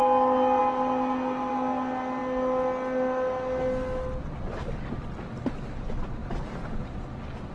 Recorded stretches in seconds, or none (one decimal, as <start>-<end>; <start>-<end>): 0.0-7.5